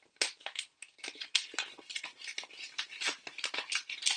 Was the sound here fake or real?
real